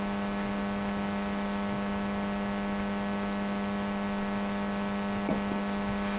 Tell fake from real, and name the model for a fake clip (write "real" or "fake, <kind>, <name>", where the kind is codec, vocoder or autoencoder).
real